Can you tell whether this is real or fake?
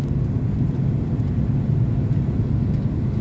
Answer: real